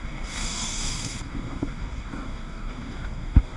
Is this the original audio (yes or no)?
no